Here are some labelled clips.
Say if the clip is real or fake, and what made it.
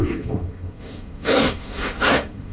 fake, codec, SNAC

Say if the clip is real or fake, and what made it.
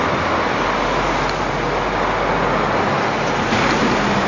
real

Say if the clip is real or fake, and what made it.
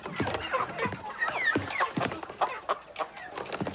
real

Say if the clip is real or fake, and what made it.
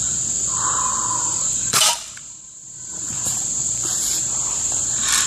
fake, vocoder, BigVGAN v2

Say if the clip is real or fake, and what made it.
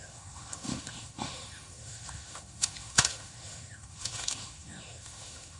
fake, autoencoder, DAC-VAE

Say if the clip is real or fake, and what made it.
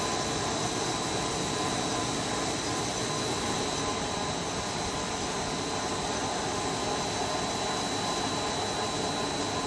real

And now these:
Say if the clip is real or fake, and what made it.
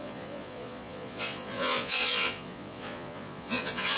fake, vocoder, Vocos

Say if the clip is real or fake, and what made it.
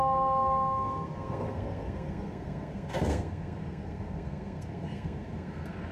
fake, codec, SNAC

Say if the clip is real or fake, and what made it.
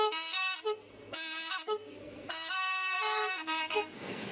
fake, codec, SNAC